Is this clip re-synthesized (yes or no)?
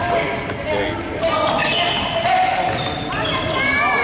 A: no